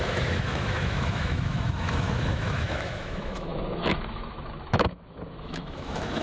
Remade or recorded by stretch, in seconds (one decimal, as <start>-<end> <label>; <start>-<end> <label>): 0.0-6.2 remade